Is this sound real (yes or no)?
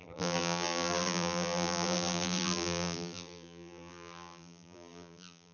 no